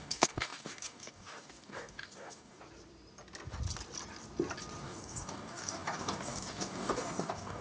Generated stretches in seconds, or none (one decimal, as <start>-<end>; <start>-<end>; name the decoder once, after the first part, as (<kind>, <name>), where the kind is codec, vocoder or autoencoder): 0.0-2.6 (codec, DAC); 4.8-7.6